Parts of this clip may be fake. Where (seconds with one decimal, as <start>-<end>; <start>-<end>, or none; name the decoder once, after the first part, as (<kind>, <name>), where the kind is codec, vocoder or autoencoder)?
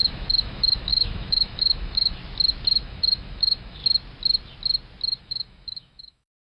0.0-2.2 (autoencoder, DAC-VAE); 2.8-3.8; 5.2-6.4